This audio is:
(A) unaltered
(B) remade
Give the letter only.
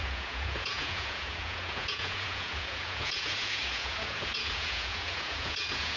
B